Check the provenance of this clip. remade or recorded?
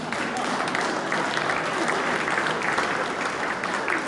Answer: recorded